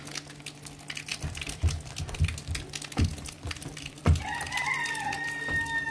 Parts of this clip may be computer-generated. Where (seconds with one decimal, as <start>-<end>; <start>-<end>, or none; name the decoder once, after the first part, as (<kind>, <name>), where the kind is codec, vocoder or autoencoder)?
1.1-2.0 (vocoder, BigVGAN v2); 3.1-4.2